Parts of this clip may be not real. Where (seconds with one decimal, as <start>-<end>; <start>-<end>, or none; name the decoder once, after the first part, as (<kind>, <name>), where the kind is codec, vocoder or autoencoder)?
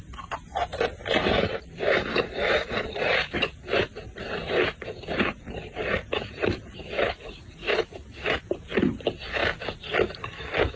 0.0-9.4 (vocoder, BigVGAN v2)